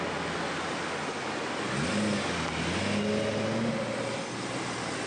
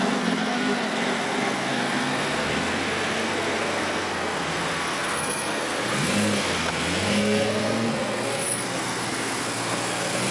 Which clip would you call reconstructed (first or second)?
second